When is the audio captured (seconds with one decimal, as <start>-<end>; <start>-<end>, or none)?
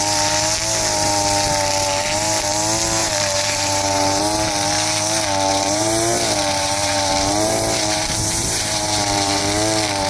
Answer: 0.0-3.0; 4.2-5.5; 9.4-10.1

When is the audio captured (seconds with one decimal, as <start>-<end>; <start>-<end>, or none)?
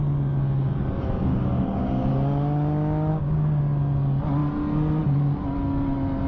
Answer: 0.0-1.3; 2.1-3.1; 3.6-6.3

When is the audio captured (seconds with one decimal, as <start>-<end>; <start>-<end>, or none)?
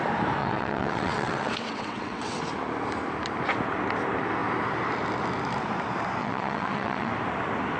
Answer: 0.0-0.4; 2.4-6.2; 7.1-7.8